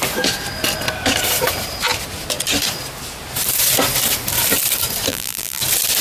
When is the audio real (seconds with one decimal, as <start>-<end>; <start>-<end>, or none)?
0.0-5.1; 5.6-6.0